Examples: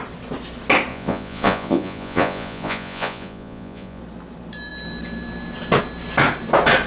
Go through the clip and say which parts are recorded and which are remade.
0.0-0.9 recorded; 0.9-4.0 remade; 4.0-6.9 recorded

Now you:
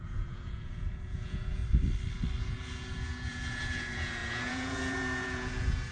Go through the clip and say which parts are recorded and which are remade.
0.0-1.6 remade; 1.6-2.4 recorded; 2.4-5.9 remade

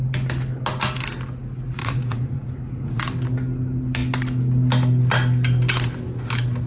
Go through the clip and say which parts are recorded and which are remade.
0.0-1.8 recorded; 1.8-3.0 remade; 3.0-6.7 recorded

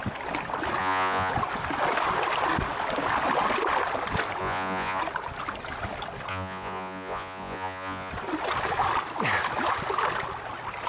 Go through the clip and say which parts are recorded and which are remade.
0.0-0.8 recorded; 0.8-1.3 remade; 1.3-4.4 recorded; 4.4-5.0 remade; 5.0-6.3 recorded; 6.3-8.1 remade; 8.1-10.9 recorded

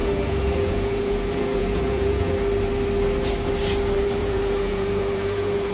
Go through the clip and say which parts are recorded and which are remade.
0.0-2.3 remade; 2.3-4.2 recorded; 4.2-5.7 remade